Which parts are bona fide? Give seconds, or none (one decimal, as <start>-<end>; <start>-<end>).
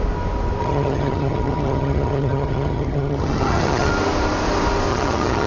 0.0-0.6; 3.9-4.9